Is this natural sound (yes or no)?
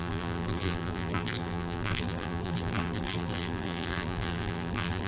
no